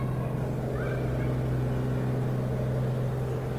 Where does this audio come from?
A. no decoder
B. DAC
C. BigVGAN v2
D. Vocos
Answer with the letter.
A